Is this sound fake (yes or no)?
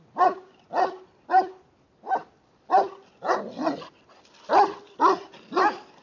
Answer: no